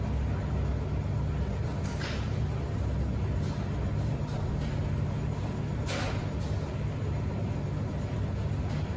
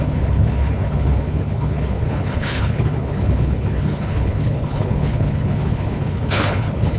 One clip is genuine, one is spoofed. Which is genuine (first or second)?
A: first